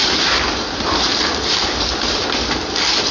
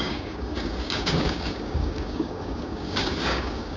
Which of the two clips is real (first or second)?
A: first